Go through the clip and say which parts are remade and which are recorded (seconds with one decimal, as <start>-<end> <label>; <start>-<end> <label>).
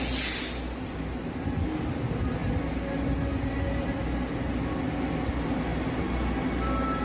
0.0-7.0 recorded